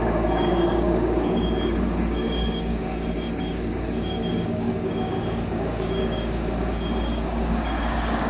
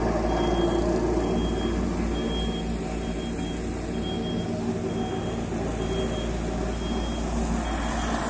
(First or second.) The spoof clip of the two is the first